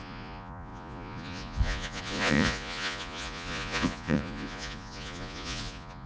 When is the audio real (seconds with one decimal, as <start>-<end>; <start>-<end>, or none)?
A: none